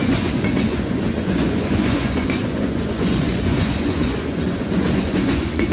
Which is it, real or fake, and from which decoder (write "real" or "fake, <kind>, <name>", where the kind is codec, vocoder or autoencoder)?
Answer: fake, vocoder, Vocos